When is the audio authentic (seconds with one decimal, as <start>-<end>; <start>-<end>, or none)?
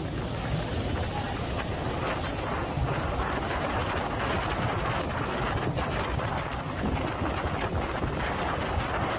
0.0-2.7; 4.0-9.2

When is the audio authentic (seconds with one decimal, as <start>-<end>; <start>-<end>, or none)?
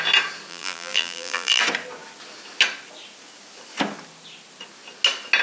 0.0-0.5; 1.6-5.4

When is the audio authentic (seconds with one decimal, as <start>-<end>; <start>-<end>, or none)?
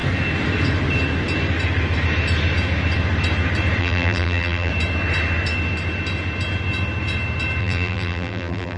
0.0-3.8; 4.7-7.6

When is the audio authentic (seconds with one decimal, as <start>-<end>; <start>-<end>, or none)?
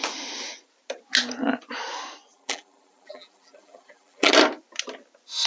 0.0-2.3; 4.3-5.5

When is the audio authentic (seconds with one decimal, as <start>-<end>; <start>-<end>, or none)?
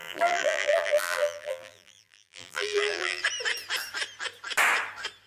3.2-5.3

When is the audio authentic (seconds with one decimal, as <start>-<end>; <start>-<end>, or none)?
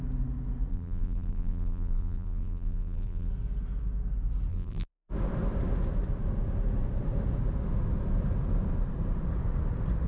0.0-0.7; 3.3-4.5; 5.1-10.1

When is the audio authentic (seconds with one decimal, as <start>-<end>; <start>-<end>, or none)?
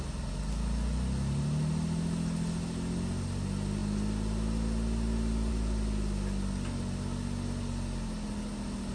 0.0-8.9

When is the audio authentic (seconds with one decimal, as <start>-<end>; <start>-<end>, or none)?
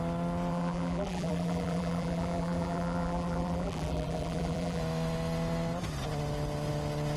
0.0-0.5; 4.8-7.2